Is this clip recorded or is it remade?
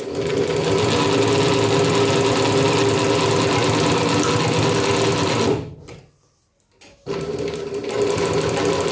recorded